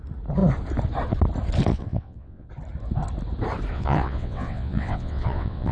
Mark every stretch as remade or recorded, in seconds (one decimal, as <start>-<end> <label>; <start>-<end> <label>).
0.0-1.7 recorded; 1.7-2.5 remade; 2.5-3.7 recorded; 3.7-5.7 remade